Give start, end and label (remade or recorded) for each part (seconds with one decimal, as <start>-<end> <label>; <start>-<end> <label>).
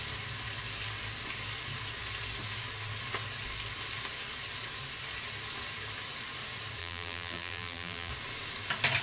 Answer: 0.0-6.8 recorded; 6.8-8.1 remade; 8.1-9.0 recorded